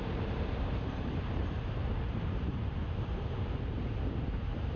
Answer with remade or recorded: remade